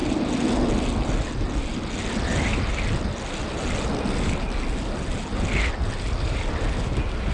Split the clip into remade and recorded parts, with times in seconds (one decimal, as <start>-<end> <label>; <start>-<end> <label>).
0.0-7.3 recorded